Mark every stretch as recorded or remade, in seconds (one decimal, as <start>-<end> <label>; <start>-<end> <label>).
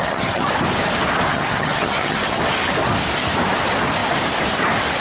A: 0.0-0.5 remade; 0.5-1.3 recorded; 1.3-2.4 remade; 2.4-5.0 recorded